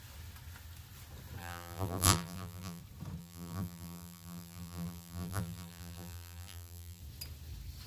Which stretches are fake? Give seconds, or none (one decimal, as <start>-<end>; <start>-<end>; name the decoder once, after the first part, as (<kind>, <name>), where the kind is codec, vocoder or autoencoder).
1.4-2.8 (vocoder, BigVGAN v2); 3.2-7.0